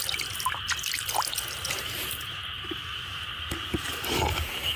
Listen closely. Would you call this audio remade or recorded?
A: recorded